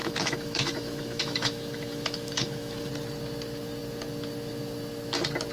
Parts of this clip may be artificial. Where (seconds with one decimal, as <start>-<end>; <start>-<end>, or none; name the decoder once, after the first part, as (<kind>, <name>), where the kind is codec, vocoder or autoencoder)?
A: 0.0-2.9 (autoencoder, DAC-VAE)